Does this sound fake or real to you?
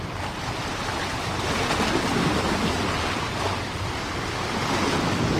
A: real